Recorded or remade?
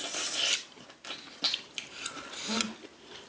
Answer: recorded